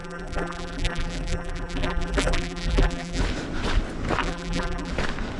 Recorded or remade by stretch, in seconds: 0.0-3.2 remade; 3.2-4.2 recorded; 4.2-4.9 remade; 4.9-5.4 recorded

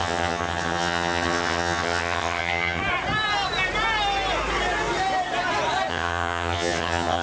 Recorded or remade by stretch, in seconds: 0.0-2.8 remade; 2.8-5.9 recorded; 5.9-7.2 remade

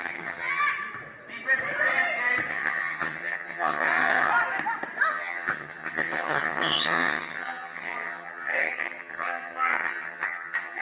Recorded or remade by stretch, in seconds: 0.0-0.6 remade; 0.6-2.5 recorded; 2.5-4.3 remade; 4.3-5.1 recorded; 5.1-10.8 remade

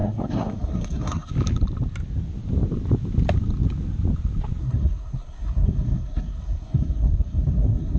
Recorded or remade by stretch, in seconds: 0.0-1.3 remade; 1.3-4.6 recorded; 4.6-8.0 remade

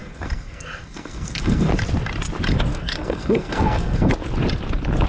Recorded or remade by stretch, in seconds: 0.0-1.7 remade; 1.7-2.7 recorded; 2.7-4.1 remade; 4.1-5.1 recorded

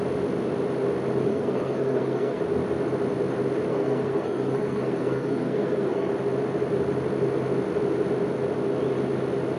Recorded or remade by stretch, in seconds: 0.0-1.3 recorded; 1.3-2.4 remade; 2.4-3.7 recorded; 3.7-6.1 remade; 6.1-9.6 recorded

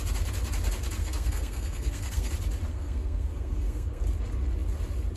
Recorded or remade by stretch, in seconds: 0.0-1.0 recorded; 1.0-2.3 remade; 2.3-2.7 recorded; 2.7-4.0 remade; 4.0-5.2 recorded

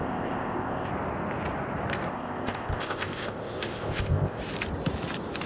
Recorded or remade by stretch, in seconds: 0.0-0.9 remade; 0.9-2.1 recorded; 2.1-4.4 remade; 4.4-5.5 recorded